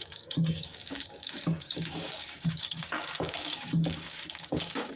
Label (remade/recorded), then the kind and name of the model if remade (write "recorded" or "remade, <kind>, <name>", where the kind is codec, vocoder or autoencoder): remade, codec, DAC